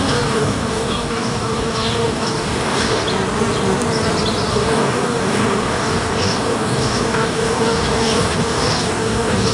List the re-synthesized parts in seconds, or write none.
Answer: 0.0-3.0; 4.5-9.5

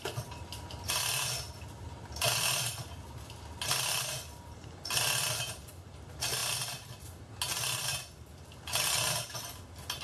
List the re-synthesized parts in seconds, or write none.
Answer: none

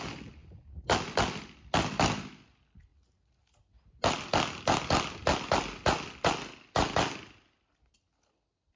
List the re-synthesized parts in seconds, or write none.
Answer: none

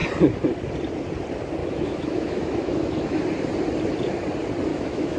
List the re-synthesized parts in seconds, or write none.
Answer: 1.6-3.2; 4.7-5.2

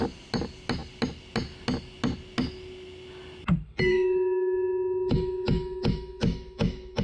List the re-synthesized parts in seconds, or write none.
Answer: 3.9-7.0

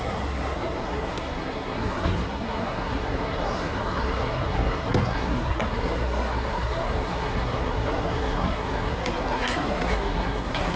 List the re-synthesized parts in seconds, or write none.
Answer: 0.0-10.8

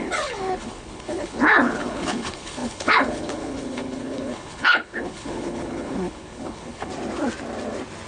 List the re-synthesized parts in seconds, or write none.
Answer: 0.0-6.9

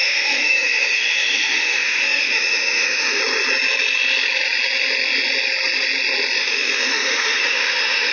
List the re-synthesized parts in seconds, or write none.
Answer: 0.0-3.2; 6.4-8.1